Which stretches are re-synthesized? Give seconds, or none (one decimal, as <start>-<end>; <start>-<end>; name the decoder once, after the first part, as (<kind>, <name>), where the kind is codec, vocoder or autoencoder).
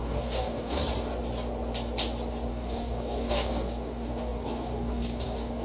0.0-0.8 (codec, DAC); 2.5-5.6